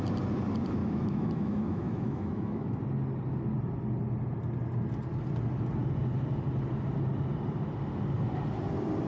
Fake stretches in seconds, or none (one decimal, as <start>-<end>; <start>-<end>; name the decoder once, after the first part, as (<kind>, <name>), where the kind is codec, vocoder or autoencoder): 0.8-2.8 (autoencoder, DAC-VAE)